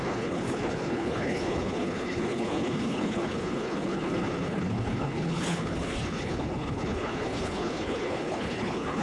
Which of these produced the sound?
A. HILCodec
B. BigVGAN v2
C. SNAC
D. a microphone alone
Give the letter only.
A